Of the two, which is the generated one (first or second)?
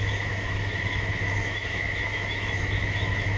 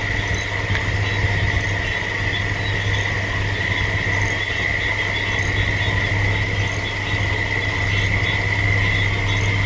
first